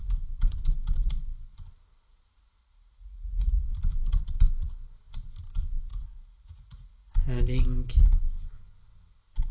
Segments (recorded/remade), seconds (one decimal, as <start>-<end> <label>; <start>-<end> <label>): 0.0-2.6 recorded; 2.6-3.6 remade; 3.6-5.9 recorded; 5.9-7.1 remade; 7.1-9.5 recorded